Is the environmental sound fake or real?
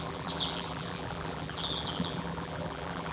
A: fake